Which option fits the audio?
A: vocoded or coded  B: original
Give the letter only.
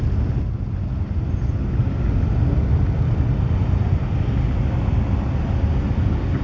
B